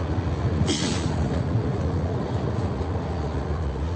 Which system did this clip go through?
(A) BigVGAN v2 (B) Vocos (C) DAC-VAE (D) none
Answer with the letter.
B